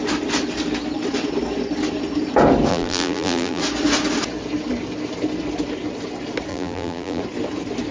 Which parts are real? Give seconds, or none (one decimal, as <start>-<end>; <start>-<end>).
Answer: 0.0-2.7; 3.6-6.5; 7.2-7.9